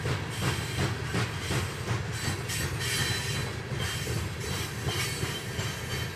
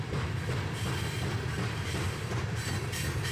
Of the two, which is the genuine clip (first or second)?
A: first